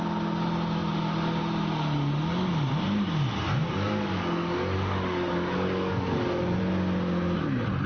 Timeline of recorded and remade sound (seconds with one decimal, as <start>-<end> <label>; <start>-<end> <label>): 0.0-3.6 recorded; 3.6-6.6 remade; 6.6-7.9 recorded